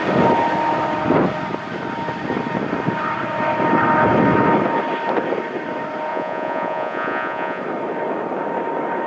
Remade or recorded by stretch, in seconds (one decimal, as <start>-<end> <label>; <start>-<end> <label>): 0.0-6.1 recorded; 6.1-7.6 remade; 7.6-9.1 recorded